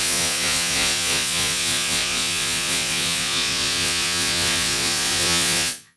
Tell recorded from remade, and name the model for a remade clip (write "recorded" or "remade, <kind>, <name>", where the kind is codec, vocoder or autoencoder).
remade, vocoder, Vocos